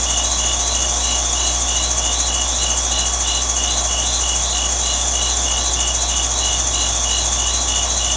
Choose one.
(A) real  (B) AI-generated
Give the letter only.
A